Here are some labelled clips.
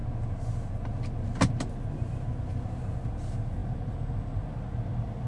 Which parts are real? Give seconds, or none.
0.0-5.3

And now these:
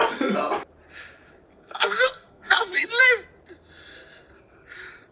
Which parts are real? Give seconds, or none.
0.0-1.5; 3.0-5.1

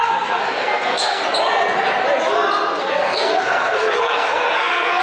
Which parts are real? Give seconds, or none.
1.2-2.8

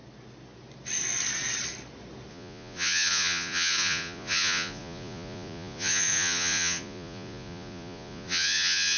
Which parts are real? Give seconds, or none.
0.0-2.3

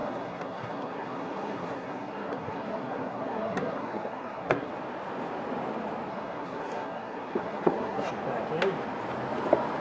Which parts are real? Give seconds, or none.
4.7-6.1; 8.1-9.8